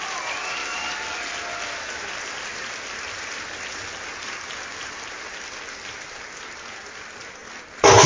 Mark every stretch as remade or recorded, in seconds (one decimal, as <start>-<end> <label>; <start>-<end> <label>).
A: 0.0-8.1 recorded